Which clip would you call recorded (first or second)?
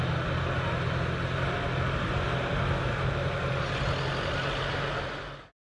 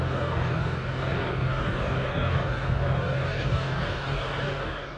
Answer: first